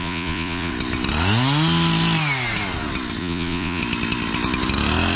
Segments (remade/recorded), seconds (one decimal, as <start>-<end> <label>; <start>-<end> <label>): 0.0-0.7 remade; 0.7-3.2 recorded; 3.2-3.8 remade; 3.8-5.2 recorded